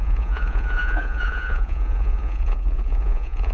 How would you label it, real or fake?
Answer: fake